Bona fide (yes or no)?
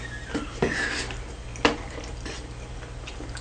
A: yes